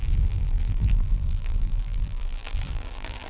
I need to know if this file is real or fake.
fake